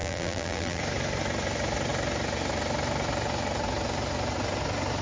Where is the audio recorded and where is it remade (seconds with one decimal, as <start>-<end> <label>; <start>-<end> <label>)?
0.0-0.8 remade; 0.8-5.0 recorded